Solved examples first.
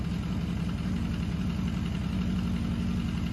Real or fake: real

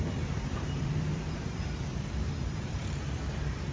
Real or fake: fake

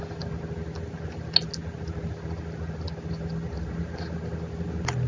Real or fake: real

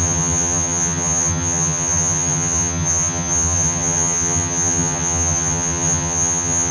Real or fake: fake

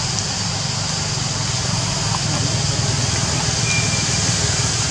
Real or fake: real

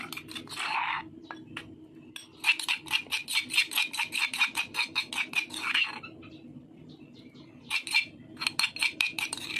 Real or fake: real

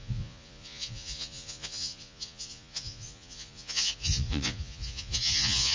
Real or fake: fake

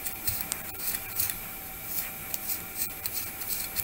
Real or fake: fake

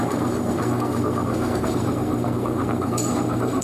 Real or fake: fake